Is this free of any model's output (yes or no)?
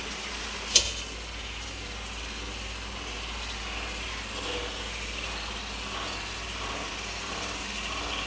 yes